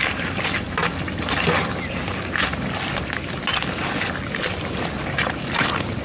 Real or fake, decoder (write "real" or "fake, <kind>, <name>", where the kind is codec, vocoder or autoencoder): real